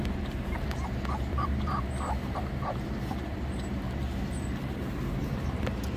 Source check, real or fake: fake